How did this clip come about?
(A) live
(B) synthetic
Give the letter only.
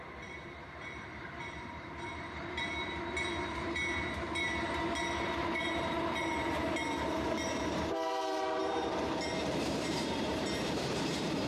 B